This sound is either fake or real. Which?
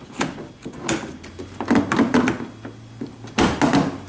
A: real